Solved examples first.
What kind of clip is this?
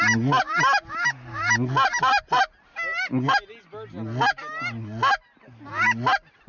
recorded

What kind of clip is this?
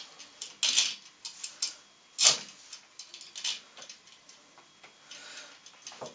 recorded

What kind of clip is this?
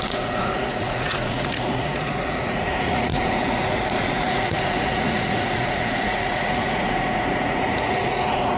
remade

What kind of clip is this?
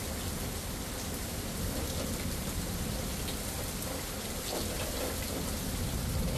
recorded